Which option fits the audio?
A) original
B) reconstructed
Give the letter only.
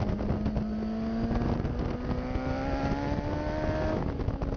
A